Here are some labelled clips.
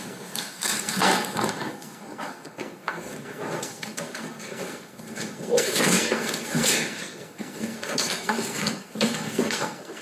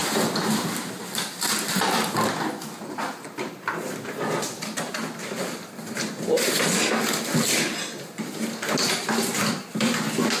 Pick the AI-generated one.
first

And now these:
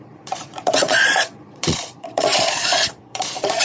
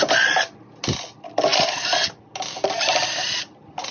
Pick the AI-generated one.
first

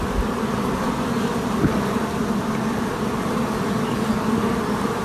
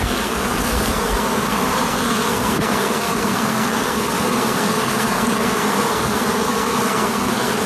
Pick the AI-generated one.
second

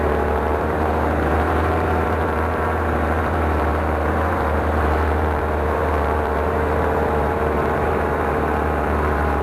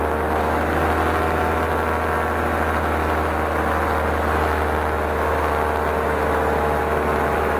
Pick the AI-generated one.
first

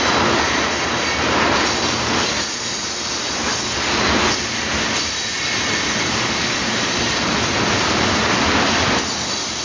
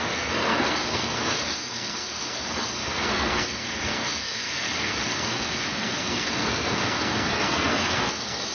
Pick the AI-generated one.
second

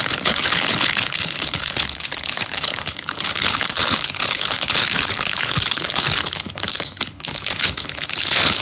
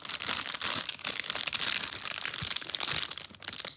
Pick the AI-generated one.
first